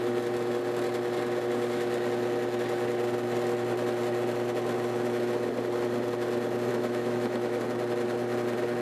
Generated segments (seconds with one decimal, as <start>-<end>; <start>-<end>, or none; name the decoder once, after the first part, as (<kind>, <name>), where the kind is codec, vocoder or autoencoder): 6.7-7.6 (autoencoder, DAC-VAE)